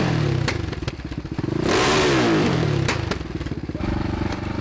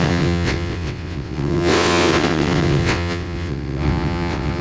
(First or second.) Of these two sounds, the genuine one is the first